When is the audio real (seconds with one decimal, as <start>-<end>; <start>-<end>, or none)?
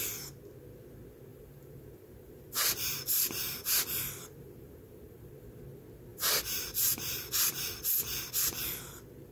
0.0-1.3; 5.3-6.1; 7.2-9.3